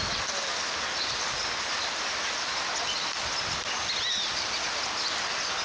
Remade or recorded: recorded